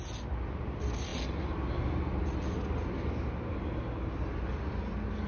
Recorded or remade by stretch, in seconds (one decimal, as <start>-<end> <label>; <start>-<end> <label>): 0.0-5.3 recorded